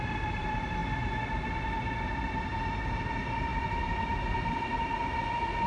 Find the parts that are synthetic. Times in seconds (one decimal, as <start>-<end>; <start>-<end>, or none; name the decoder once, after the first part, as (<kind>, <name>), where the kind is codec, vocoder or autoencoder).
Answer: none